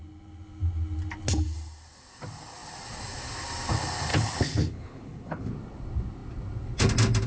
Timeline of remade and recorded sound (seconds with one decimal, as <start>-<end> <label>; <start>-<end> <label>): 0.0-4.1 recorded; 4.1-5.5 remade; 5.5-7.3 recorded

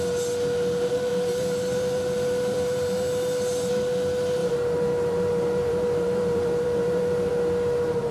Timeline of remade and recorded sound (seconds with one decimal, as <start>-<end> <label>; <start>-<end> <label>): 0.0-1.1 recorded; 1.1-3.7 remade; 3.7-4.4 recorded; 4.4-7.3 remade; 7.3-8.1 recorded

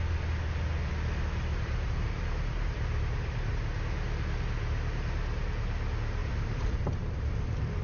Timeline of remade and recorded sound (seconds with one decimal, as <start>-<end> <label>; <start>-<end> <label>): 0.0-1.5 recorded; 1.5-3.5 remade; 3.5-6.2 recorded; 6.2-7.8 remade

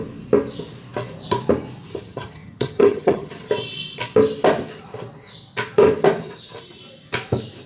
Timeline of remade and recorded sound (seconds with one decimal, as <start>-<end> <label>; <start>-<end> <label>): 0.0-2.0 recorded; 2.0-3.3 remade; 3.3-7.7 recorded